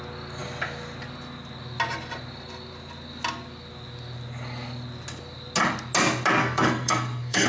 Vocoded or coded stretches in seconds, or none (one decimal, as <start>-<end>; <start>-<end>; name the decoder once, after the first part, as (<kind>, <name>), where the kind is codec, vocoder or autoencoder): 6.4-7.5 (codec, SNAC)

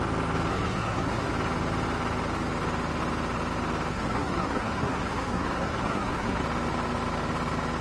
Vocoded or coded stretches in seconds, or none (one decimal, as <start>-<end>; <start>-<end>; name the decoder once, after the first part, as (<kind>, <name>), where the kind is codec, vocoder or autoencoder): 0.5-1.3 (codec, SNAC); 3.9-6.4

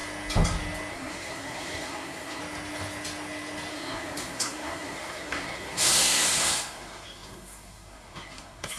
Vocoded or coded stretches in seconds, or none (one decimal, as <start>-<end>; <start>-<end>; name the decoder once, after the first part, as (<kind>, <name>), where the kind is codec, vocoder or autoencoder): 0.9-2.4 (codec, SNAC); 3.7-8.8

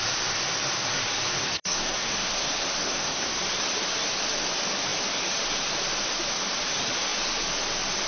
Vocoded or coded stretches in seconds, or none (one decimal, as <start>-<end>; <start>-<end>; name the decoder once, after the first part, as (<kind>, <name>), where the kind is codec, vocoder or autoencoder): 1.4-2.2 (codec, SNAC); 2.8-3.4

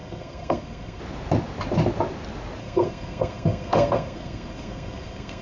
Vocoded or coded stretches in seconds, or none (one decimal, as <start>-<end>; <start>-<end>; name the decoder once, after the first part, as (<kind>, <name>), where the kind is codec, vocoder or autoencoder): 0.0-1.0 (codec, SNAC); 2.6-5.4